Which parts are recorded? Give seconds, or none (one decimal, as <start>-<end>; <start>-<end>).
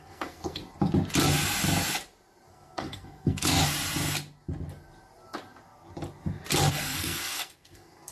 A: 0.6-2.5; 3.6-6.7